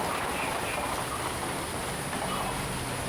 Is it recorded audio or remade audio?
recorded